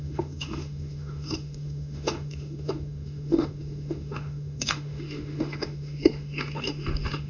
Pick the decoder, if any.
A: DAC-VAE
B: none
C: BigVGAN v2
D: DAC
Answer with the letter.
A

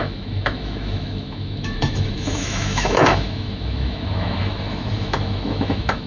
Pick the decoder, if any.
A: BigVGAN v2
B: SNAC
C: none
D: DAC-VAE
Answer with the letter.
D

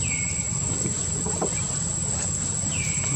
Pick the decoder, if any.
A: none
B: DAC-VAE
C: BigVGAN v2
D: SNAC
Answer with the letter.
A